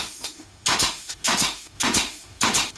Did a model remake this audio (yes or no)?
yes